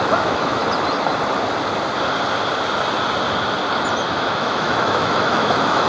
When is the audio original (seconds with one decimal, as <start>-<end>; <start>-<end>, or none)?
0.6-4.1